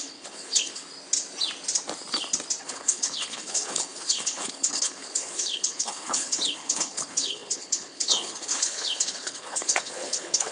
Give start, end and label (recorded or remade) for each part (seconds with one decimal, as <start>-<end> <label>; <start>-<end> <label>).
0.0-0.8 remade; 0.8-2.6 recorded; 2.6-10.5 remade